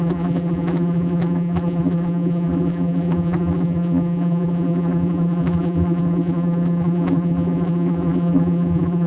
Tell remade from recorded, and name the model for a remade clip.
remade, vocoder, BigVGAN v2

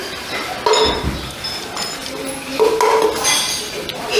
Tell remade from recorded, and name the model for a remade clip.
recorded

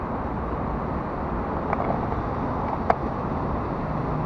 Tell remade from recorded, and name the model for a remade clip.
recorded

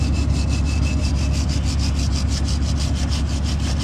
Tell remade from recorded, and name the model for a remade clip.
recorded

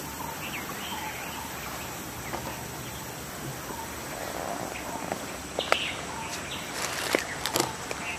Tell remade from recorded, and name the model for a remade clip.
recorded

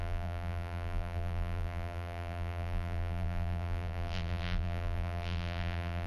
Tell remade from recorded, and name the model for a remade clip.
remade, vocoder, BigVGAN v2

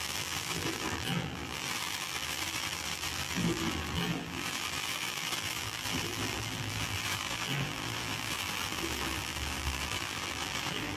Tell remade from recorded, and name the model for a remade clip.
remade, vocoder, BigVGAN v2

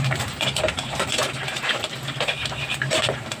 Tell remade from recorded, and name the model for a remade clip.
recorded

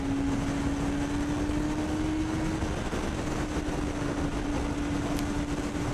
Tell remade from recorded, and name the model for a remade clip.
recorded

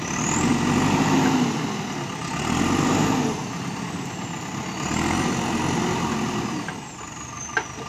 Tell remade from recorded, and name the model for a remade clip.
recorded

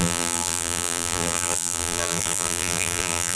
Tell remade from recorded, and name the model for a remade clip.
remade, vocoder, BigVGAN v2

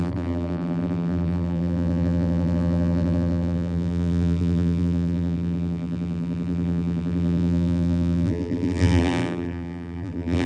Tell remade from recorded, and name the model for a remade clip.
remade, vocoder, BigVGAN v2